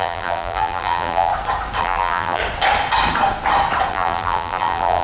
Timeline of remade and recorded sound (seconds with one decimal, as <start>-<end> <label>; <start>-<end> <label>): 0.0-1.3 remade; 1.3-1.8 recorded; 1.8-2.4 remade; 2.4-3.9 recorded; 3.9-5.0 remade